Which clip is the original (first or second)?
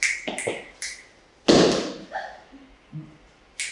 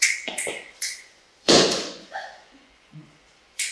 first